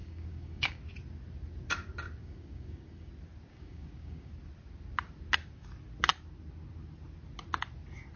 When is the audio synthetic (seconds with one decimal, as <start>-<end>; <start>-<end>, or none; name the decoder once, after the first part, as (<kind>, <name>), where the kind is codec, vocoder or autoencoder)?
0.0-0.8 (codec, DAC); 2.2-3.1; 3.5-4.3